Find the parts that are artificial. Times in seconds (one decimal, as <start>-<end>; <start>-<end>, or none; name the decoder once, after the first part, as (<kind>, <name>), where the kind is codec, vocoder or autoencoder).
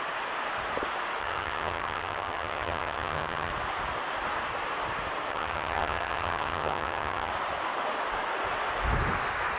1.2-3.5 (vocoder, HiFi-GAN); 5.3-7.3